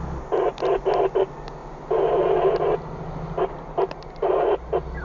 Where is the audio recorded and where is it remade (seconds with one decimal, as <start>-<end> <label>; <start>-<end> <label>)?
0.0-5.0 recorded